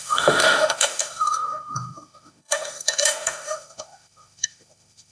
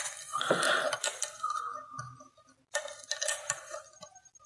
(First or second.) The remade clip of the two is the first